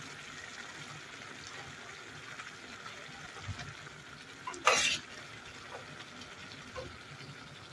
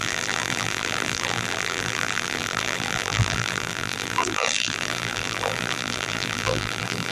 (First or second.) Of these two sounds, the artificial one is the second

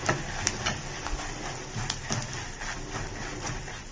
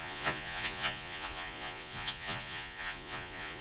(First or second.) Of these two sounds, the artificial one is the second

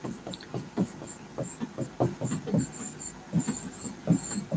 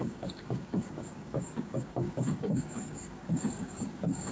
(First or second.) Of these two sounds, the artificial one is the second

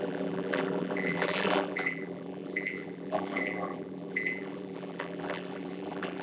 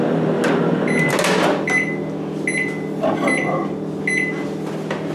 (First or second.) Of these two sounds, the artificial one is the first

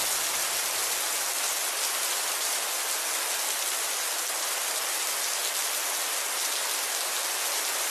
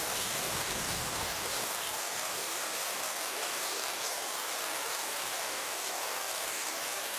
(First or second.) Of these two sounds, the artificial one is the second